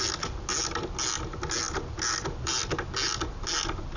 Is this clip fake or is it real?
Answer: real